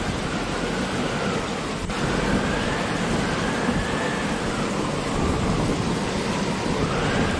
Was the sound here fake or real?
real